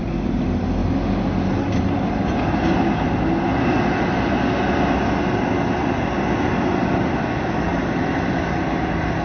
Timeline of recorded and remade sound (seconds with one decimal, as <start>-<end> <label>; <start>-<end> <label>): 0.0-9.2 recorded